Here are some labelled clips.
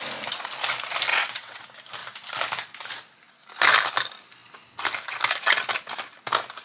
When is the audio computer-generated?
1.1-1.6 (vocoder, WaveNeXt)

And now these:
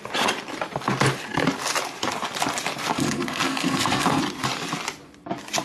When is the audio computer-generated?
2.9-4.2 (codec, SNAC)